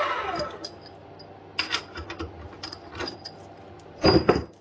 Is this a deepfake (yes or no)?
no